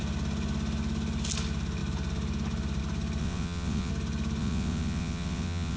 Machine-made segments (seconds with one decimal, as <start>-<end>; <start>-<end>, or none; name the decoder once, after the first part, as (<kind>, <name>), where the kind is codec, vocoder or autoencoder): 3.2-3.9 (vocoder, WaveNeXt); 4.4-5.8